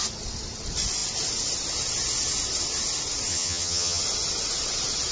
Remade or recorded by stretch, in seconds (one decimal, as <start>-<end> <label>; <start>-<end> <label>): 0.0-3.3 recorded; 3.3-4.0 remade; 4.0-5.1 recorded